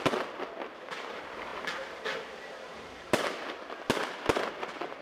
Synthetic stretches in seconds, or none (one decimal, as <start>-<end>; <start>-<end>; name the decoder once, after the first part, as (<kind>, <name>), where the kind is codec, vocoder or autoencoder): none